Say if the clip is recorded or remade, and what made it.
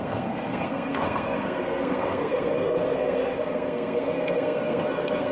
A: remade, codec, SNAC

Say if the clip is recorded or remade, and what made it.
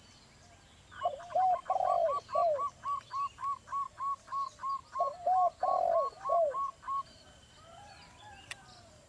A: recorded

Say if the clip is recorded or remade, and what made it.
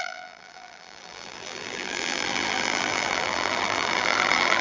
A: remade, vocoder, BigVGAN v2